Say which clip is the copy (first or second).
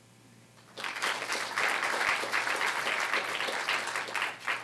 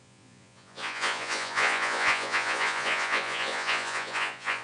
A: second